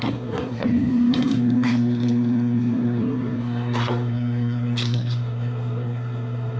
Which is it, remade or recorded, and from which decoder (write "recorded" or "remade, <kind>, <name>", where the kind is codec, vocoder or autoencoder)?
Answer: remade, codec, SNAC